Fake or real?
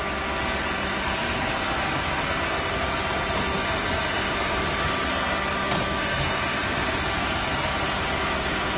real